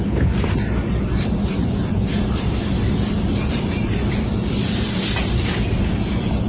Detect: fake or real fake